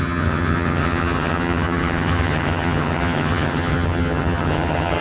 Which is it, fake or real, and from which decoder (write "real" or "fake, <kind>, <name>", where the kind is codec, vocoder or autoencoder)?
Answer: fake, vocoder, HiFi-GAN